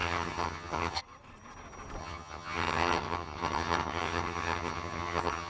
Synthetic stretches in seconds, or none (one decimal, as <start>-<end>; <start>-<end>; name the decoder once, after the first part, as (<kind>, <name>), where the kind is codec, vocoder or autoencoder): 0.0-1.0 (vocoder, HiFi-GAN); 2.0-5.5